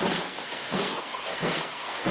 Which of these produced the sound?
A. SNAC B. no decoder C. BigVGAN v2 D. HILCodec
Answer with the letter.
A